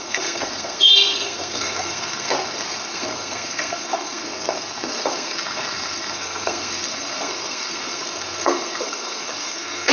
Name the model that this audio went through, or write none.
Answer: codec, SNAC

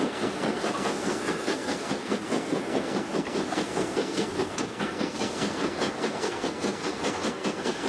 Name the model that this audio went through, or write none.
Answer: codec, SNAC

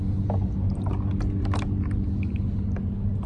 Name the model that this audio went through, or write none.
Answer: none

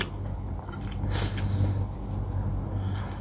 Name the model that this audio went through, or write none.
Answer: none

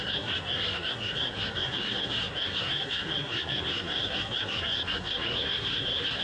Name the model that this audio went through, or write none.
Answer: codec, SNAC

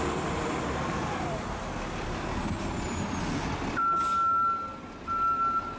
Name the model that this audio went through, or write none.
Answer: none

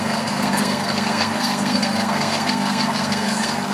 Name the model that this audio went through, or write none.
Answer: codec, SNAC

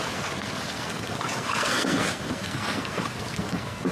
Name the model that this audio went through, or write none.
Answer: codec, SNAC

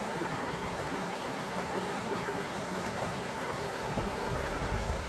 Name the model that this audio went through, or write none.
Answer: codec, SNAC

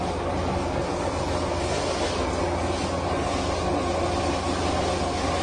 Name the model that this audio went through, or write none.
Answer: none